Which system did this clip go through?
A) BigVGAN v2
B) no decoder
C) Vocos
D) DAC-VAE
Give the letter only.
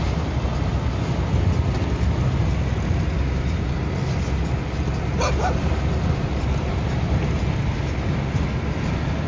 B